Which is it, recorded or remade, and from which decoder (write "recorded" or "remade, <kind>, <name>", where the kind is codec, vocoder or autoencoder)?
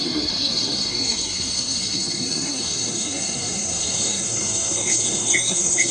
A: remade, codec, SNAC